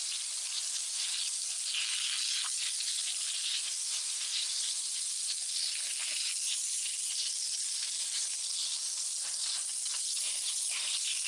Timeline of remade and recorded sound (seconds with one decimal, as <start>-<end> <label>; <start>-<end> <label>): 0.0-3.4 recorded; 3.4-4.6 remade; 4.6-11.3 recorded